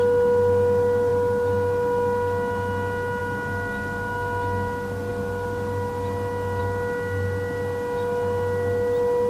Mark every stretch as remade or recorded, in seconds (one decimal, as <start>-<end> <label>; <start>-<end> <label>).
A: 0.0-9.3 recorded